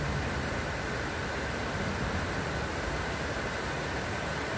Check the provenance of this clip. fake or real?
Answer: real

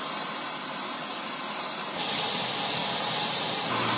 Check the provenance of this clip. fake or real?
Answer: real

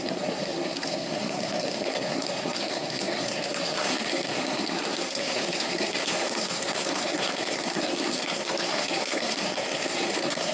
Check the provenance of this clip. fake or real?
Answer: fake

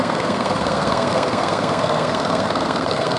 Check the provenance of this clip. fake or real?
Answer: fake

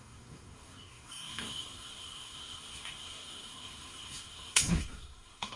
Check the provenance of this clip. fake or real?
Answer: fake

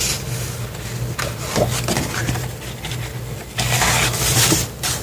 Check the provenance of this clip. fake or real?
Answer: real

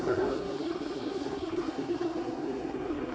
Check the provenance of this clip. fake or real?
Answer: fake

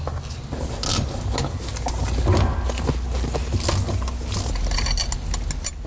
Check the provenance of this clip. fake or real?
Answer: real